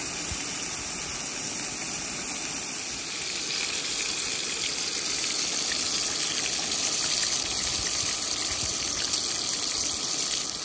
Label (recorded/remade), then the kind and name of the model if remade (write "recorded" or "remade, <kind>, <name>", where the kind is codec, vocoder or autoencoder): recorded